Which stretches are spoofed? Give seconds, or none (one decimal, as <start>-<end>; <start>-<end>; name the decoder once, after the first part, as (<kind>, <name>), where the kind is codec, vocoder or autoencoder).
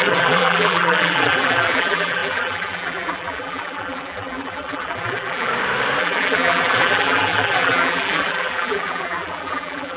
0.0-5.5 (vocoder, BigVGAN v2); 6.0-10.0